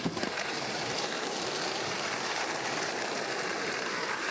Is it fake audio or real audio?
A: fake